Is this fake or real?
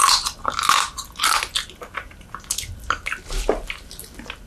real